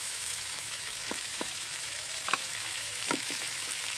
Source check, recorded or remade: remade